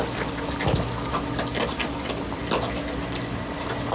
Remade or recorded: recorded